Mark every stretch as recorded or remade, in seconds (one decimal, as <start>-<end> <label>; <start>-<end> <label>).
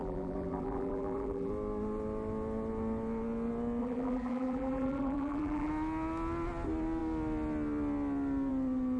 0.0-1.5 remade; 1.5-3.8 recorded; 3.8-5.7 remade; 5.7-9.0 recorded